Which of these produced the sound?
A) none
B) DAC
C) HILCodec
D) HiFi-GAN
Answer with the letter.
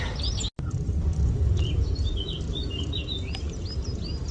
A